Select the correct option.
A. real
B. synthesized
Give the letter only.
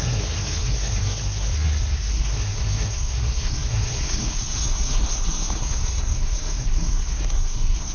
B